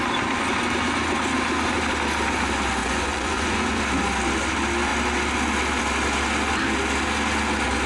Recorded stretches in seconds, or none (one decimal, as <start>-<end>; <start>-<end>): 0.0-2.8; 3.8-7.9